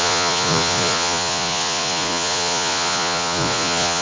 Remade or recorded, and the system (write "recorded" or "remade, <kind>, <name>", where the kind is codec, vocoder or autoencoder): remade, vocoder, Vocos